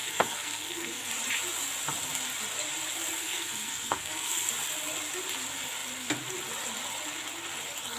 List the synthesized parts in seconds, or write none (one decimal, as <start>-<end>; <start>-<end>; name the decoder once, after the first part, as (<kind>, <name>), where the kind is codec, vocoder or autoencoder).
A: 0.0-1.1 (codec, SNAC); 3.2-4.5